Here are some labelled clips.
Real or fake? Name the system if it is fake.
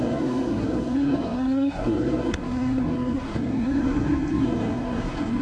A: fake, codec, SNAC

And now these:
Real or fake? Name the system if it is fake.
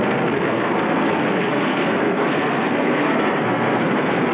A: fake, codec, SNAC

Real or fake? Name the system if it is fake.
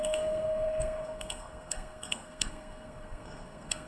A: fake, codec, SNAC